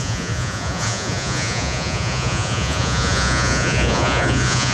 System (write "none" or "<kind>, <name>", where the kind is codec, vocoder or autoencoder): vocoder, Vocos